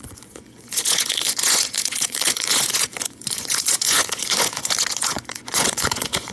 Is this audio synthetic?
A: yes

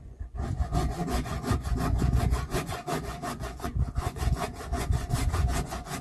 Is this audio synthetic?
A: yes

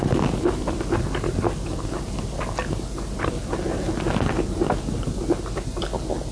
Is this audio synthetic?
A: no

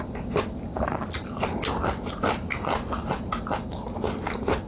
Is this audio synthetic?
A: no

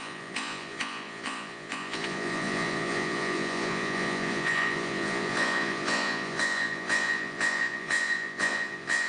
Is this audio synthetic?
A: yes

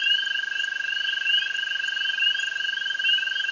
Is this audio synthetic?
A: no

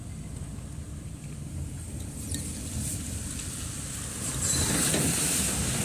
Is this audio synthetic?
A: no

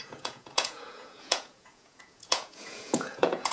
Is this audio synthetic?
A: yes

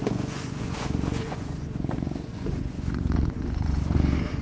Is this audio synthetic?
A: yes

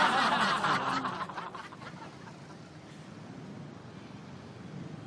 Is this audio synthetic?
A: no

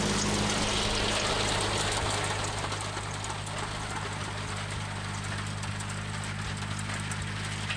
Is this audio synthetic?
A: no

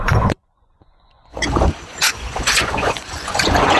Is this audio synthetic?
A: yes